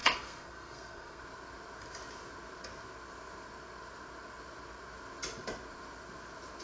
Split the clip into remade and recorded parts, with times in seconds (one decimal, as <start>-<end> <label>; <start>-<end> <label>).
0.0-1.2 remade; 1.2-6.6 recorded